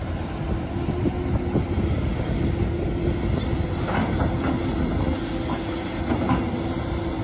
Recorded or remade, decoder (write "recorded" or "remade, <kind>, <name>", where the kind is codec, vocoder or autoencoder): recorded